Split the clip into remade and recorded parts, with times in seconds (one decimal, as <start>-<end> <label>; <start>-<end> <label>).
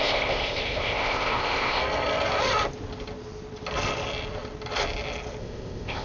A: 0.0-1.8 remade; 1.8-5.4 recorded; 5.4-6.0 remade